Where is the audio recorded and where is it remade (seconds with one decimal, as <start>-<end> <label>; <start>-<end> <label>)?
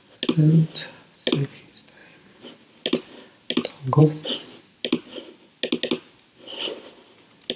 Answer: 0.0-7.6 recorded